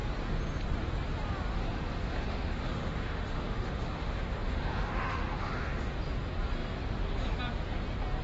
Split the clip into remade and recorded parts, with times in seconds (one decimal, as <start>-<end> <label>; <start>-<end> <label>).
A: 0.0-1.6 recorded; 1.6-6.0 remade; 6.0-8.2 recorded